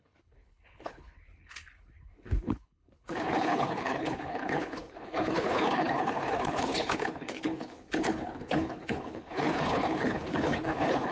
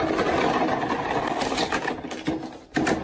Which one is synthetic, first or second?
first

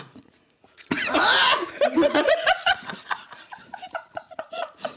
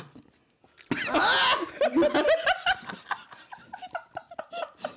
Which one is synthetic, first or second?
first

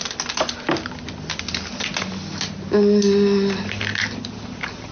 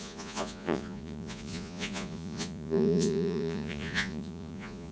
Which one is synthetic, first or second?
second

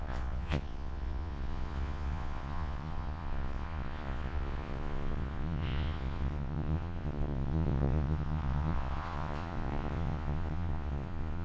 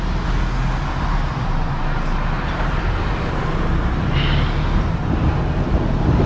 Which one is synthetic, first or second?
first